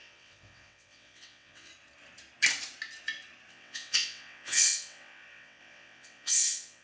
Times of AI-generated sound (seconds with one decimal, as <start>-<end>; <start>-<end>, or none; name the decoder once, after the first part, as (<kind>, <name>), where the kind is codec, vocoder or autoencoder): 0.0-1.7 (vocoder, WaveNeXt); 3.5-6.8